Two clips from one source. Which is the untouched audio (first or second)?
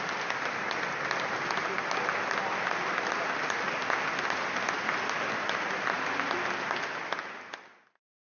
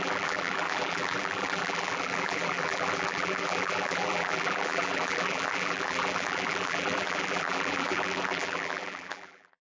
first